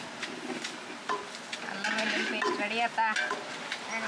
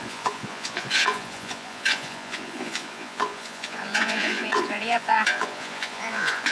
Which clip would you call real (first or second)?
first